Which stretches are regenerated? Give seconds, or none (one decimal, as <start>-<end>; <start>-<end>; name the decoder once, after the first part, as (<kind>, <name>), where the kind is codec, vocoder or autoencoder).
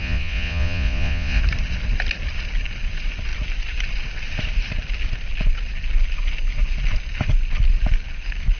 0.0-1.4 (vocoder, Vocos)